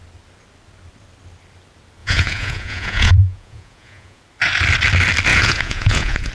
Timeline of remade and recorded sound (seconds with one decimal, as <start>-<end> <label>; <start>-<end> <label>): 0.0-2.0 recorded; 2.0-4.2 remade; 4.2-5.3 recorded; 5.3-6.3 remade